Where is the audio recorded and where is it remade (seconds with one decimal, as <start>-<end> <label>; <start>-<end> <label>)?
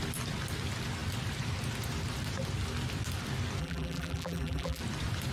0.0-3.6 recorded; 3.6-4.8 remade; 4.8-5.3 recorded